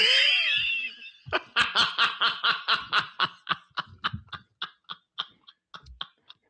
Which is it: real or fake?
real